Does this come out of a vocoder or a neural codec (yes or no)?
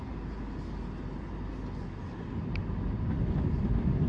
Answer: no